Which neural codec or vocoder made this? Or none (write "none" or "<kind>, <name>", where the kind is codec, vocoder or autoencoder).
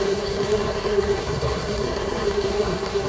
codec, SNAC